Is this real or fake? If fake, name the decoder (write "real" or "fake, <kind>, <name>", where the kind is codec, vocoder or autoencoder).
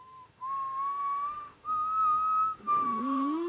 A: fake, autoencoder, DAC-VAE